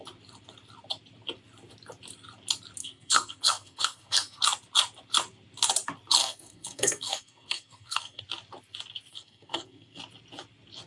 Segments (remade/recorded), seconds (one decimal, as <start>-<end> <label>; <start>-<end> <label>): 0.0-2.8 recorded; 2.8-4.4 remade; 4.4-6.2 recorded; 6.2-8.2 remade; 8.2-9.1 recorded; 9.1-10.0 remade; 10.0-10.9 recorded

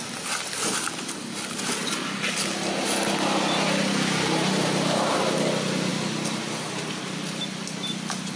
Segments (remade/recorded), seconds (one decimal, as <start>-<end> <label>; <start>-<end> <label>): 0.0-8.4 recorded

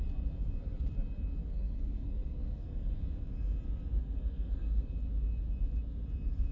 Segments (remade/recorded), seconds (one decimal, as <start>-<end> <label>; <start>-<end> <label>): 0.0-1.4 recorded; 1.4-2.9 remade; 2.9-4.0 recorded; 4.0-4.9 remade; 4.9-6.5 recorded

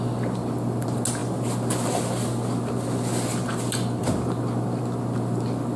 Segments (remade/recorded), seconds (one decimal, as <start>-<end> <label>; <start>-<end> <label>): 0.0-5.8 recorded

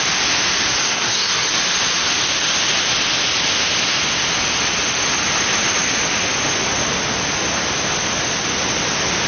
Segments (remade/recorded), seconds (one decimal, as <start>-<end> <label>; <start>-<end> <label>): 0.0-0.8 recorded; 0.8-1.5 remade; 1.5-9.3 recorded

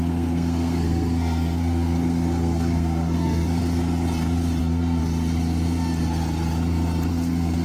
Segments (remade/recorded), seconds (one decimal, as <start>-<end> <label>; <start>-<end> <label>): 0.0-3.6 remade; 3.6-4.6 recorded; 4.6-5.0 remade; 5.0-7.1 recorded; 7.1-7.6 remade

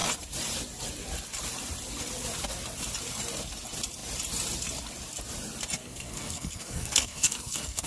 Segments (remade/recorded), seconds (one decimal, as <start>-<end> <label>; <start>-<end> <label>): 0.0-5.8 recorded; 5.8-7.9 remade